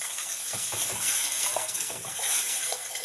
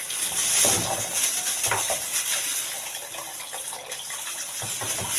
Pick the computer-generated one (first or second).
first